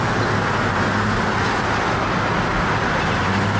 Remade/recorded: recorded